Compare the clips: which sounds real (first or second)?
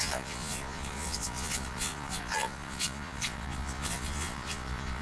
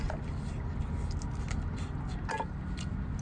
second